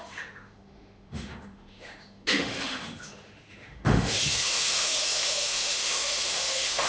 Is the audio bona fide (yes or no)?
no